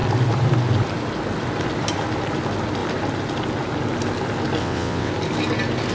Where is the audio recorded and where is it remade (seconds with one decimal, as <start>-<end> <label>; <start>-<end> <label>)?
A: 0.0-4.6 recorded; 4.6-5.1 remade; 5.1-5.9 recorded